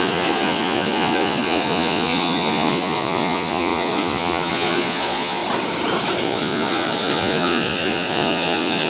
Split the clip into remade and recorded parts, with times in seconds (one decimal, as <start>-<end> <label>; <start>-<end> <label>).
0.0-5.4 remade; 5.4-6.2 recorded; 6.2-8.9 remade